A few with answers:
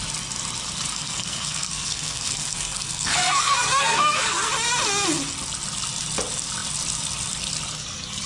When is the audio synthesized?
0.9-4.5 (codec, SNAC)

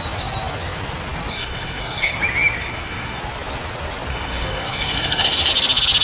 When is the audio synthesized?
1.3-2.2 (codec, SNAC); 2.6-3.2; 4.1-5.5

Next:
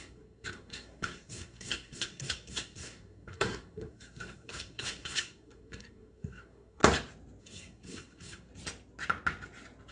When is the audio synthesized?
0.0-6.8 (codec, SNAC); 7.4-8.5